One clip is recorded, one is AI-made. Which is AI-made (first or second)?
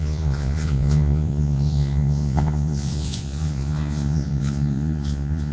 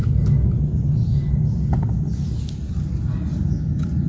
first